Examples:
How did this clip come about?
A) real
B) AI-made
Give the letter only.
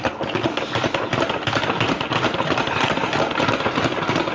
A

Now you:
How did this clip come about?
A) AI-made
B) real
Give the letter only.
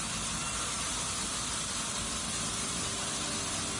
B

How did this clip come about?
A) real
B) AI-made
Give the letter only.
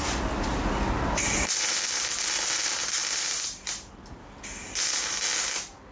B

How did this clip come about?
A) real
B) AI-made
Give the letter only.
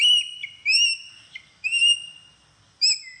A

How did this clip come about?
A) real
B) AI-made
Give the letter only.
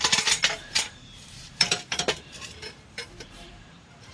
B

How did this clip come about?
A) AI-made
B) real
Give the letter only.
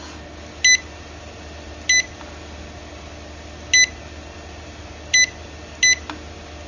B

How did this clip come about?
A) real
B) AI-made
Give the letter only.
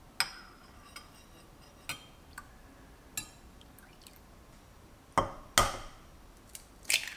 A